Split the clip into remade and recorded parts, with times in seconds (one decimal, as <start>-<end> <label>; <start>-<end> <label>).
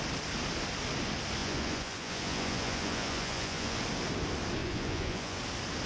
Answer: 0.0-1.4 recorded; 1.4-3.8 remade; 3.8-4.6 recorded; 4.6-5.4 remade; 5.4-5.9 recorded